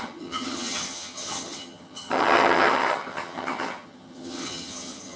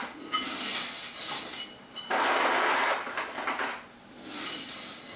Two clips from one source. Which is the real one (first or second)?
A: second